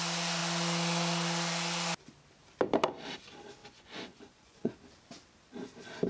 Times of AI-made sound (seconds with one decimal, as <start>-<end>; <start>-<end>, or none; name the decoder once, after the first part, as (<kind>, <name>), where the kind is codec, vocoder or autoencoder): 3.6-4.7 (vocoder, Vocos)